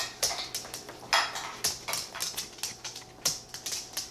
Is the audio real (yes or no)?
yes